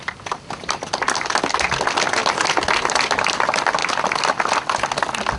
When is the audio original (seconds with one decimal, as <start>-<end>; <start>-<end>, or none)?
0.0-5.4